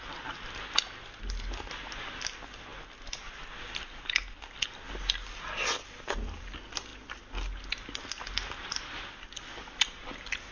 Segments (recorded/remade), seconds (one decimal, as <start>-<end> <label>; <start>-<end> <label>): 0.0-10.5 recorded